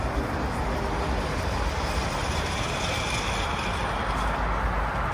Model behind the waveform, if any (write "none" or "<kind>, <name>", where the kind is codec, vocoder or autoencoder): none